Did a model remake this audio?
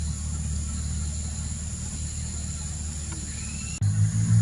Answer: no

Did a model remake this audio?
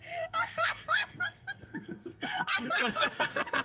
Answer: yes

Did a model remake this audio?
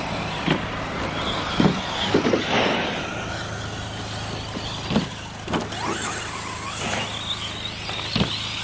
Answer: no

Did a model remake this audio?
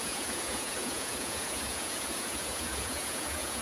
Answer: yes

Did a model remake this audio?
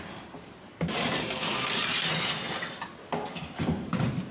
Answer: no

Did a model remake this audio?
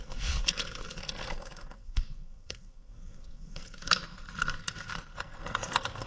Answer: yes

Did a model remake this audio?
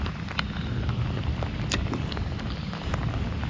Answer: no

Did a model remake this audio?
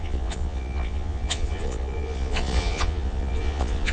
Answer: yes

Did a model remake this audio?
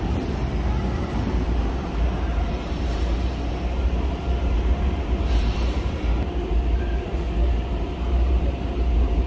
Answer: yes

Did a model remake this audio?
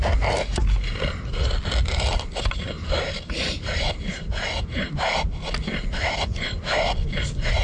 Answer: no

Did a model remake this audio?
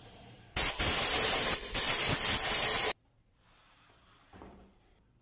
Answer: yes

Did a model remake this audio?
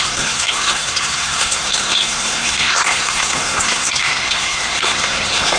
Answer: yes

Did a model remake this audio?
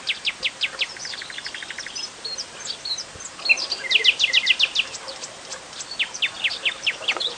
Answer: no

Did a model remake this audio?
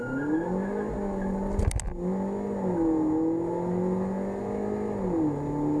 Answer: no